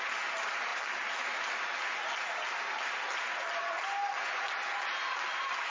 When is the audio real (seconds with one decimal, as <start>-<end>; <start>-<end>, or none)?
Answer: 0.0-5.7